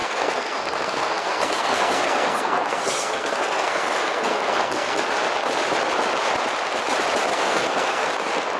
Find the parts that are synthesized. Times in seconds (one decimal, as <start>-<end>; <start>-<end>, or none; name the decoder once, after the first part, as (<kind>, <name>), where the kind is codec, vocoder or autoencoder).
0.0-5.0 (codec, SNAC); 7.3-8.1

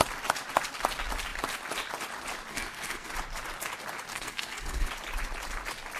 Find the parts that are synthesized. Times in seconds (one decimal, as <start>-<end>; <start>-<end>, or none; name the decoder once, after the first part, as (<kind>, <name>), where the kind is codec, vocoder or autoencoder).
2.5-3.1 (codec, SNAC); 4.1-4.9

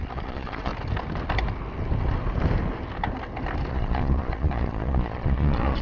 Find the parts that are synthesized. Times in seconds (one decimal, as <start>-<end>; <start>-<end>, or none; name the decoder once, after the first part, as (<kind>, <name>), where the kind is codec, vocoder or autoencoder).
0.0-0.7 (vocoder, Vocos); 3.7-5.8

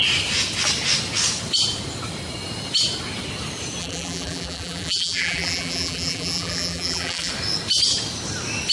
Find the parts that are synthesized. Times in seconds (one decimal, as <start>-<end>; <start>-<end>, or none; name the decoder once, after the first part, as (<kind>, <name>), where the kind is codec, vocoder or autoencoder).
3.8-7.3 (vocoder, BigVGAN v2)

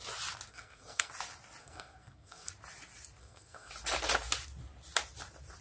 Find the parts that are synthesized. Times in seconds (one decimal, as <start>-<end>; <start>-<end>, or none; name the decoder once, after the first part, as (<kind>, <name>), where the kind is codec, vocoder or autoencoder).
0.5-1.1 (codec, SNAC); 1.6-2.5; 3.2-3.7